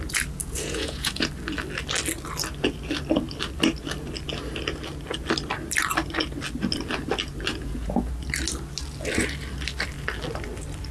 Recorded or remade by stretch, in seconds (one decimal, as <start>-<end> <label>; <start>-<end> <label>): 0.0-0.4 recorded; 0.4-1.3 remade; 1.3-7.5 recorded; 7.5-8.1 remade; 8.1-10.9 recorded